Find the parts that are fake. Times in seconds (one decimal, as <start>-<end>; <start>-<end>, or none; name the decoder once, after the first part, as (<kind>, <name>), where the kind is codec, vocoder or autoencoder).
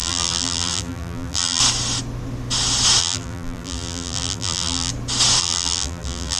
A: 0.0-1.6 (vocoder, BigVGAN v2); 3.0-4.9; 5.4-6.4